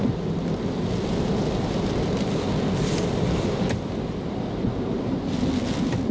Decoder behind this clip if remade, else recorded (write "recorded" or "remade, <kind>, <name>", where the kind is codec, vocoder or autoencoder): recorded